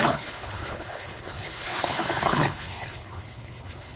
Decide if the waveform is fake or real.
fake